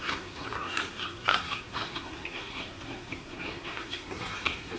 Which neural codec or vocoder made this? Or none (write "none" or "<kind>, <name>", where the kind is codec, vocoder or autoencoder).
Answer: codec, SNAC